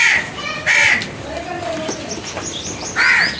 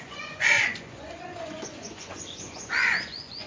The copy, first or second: second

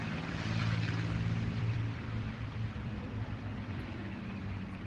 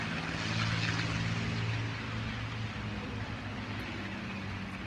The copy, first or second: first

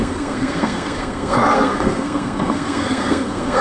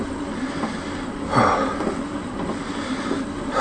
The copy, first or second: first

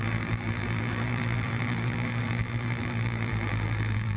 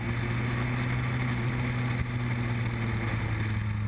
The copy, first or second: first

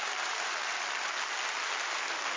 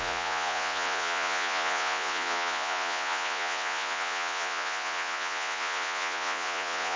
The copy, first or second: second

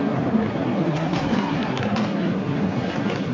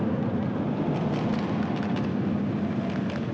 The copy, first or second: first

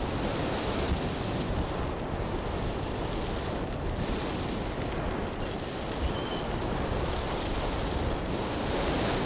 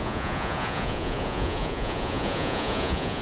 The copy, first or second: second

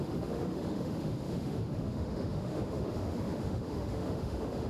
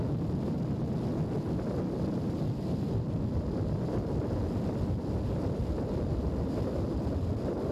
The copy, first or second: first